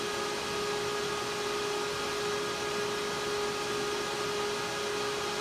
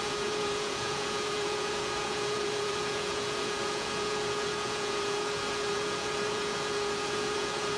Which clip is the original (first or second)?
first